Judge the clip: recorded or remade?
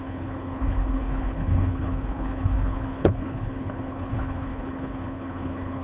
remade